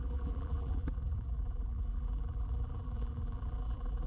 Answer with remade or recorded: remade